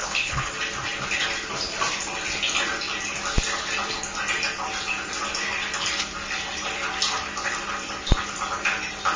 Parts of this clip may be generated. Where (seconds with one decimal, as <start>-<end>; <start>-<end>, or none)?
0.0-0.5

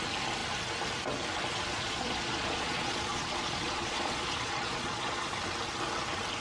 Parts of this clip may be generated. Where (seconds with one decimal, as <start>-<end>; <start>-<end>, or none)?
1.5-5.3

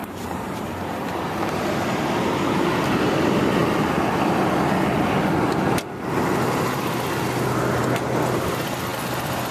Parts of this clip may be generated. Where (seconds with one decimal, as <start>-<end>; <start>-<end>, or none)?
0.0-1.7